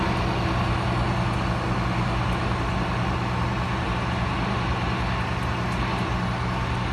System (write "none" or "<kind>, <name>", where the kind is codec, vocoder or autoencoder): none